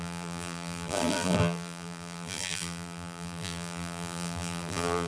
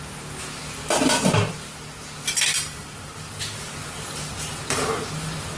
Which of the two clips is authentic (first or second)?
second